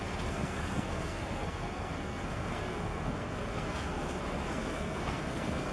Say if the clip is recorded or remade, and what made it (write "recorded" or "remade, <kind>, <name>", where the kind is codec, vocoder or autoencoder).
remade, codec, SNAC